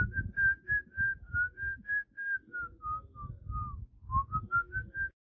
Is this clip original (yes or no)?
yes